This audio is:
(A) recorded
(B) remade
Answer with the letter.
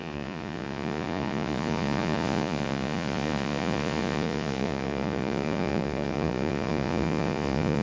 B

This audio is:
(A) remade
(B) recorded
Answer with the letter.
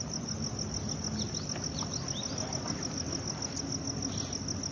B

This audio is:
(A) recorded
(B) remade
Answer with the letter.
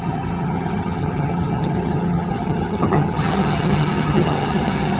B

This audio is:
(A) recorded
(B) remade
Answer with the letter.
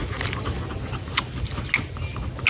A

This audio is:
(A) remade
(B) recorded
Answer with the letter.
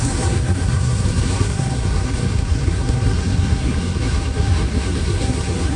A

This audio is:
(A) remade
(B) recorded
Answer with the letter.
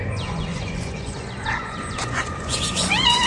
A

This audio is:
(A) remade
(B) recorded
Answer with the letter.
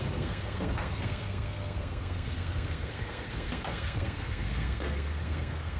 A